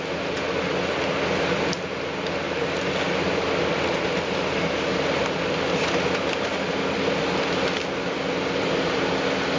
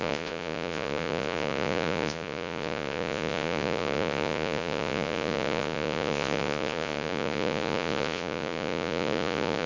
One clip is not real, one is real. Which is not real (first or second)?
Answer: second